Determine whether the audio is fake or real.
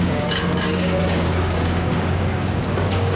fake